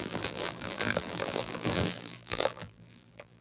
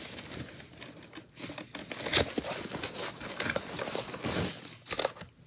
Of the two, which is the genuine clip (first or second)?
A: second